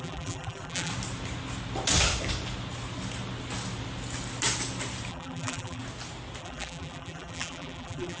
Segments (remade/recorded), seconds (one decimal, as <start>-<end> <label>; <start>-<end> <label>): 0.0-0.9 remade; 0.9-5.1 recorded; 5.1-5.8 remade; 5.8-6.4 recorded; 6.4-8.2 remade